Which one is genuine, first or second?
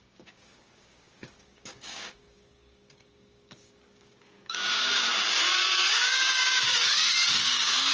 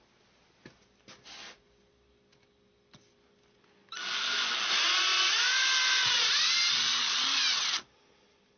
second